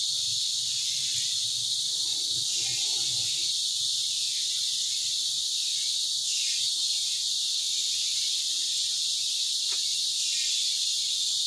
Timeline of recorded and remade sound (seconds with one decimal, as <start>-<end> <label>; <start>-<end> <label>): 0.0-11.5 recorded